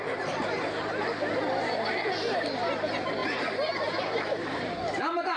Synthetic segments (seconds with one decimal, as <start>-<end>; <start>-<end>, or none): 4.4-5.0